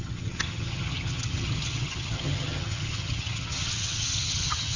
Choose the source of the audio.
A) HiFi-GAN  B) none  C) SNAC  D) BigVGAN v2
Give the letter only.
A